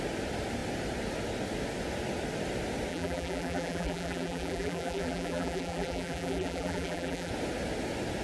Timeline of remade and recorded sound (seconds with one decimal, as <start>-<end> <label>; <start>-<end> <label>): 0.0-2.9 recorded; 2.9-7.3 remade; 7.3-8.2 recorded